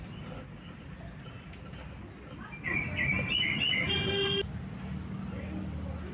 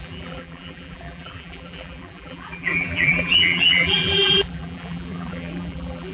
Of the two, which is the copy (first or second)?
second